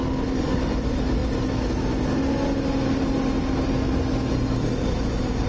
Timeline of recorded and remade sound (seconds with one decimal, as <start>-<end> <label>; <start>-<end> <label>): 0.0-5.5 recorded